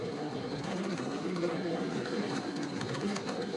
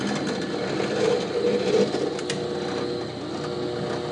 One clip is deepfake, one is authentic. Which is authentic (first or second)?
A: second